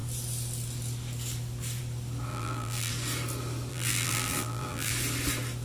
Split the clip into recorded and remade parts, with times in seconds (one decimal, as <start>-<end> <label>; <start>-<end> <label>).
0.0-2.3 recorded; 2.3-2.9 remade; 2.9-3.7 recorded; 3.7-4.9 remade; 4.9-5.6 recorded